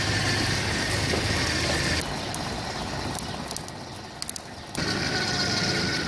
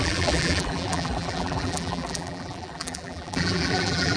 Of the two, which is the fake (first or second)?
second